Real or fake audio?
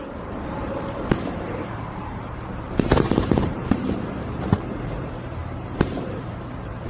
fake